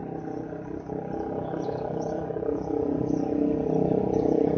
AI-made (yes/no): no